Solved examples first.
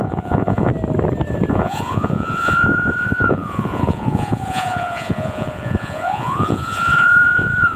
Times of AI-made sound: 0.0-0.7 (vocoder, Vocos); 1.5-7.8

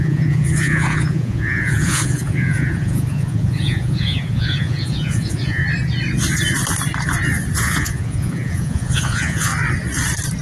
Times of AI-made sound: 0.0-5.6 (vocoder, Vocos); 7.6-9.5

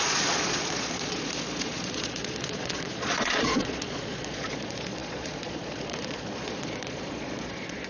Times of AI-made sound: 0.0-7.9 (vocoder, Vocos)

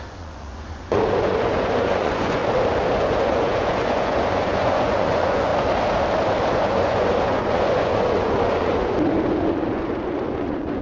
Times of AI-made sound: 0.0-2.4 (vocoder, Vocos); 2.9-5.5; 6.5-10.8

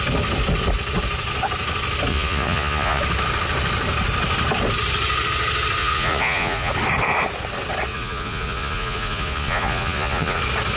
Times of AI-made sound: 2.1-3.0 (vocoder, Vocos); 5.8-6.7; 7.9-10.4

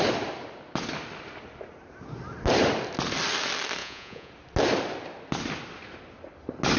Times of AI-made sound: 3.8-4.3 (vocoder, Vocos)

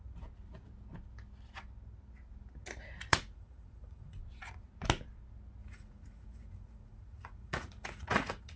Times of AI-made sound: 3.1-4.2 (vocoder, Vocos); 5.6-8.6

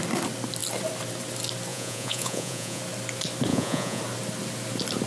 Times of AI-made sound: 1.7-2.8 (vocoder, Vocos); 3.5-4.0